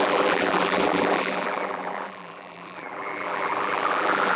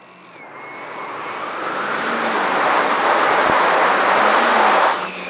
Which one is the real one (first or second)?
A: second